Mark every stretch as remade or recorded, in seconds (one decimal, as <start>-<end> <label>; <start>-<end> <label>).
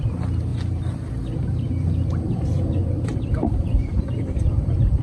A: 0.0-0.5 remade; 0.5-3.5 recorded; 3.5-5.0 remade